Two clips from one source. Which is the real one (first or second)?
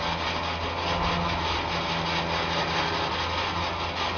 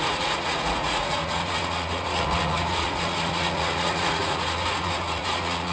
first